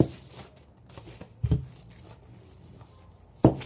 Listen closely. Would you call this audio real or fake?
real